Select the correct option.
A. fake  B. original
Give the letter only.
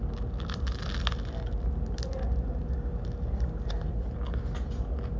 B